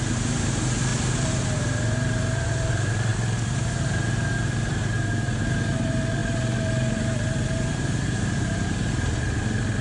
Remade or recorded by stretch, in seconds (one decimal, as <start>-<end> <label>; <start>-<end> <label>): 0.0-9.8 remade